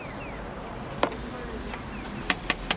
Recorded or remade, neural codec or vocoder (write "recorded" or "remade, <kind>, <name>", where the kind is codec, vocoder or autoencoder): recorded